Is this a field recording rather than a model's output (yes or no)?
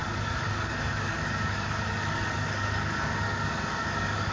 no